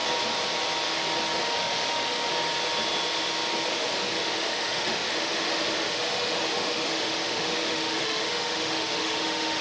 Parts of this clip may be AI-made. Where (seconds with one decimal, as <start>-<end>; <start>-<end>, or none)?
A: 1.4-2.3; 3.7-9.6